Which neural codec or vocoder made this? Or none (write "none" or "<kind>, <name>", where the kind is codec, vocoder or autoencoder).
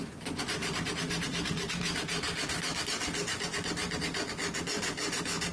none